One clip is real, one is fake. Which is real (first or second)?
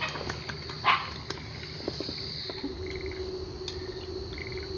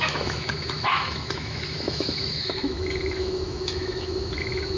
first